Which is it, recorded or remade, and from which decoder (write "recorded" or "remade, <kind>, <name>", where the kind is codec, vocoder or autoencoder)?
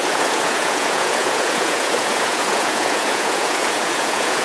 remade, vocoder, Vocos